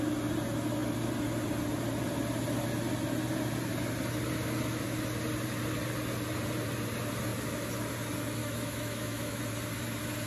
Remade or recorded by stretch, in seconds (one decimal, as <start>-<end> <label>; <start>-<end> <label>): 0.0-8.4 recorded; 8.4-9.4 remade; 9.4-10.3 recorded